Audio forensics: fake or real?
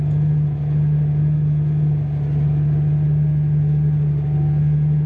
real